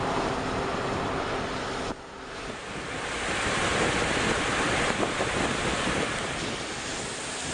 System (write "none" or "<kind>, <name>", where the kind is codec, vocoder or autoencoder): none